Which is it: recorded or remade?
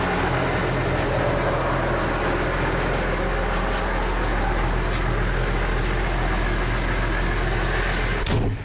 recorded